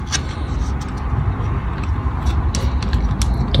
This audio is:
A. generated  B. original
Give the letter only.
B